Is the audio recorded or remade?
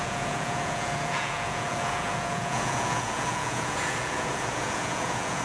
remade